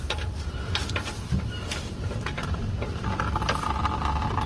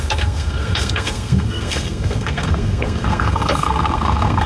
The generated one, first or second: second